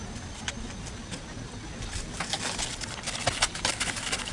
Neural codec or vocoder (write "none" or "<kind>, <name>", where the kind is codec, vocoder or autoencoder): none